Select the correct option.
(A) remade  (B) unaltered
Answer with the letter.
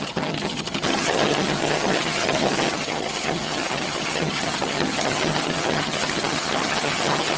A